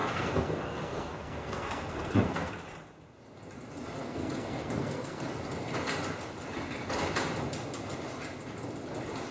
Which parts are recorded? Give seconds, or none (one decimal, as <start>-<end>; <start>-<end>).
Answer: 2.5-4.0; 5.3-9.3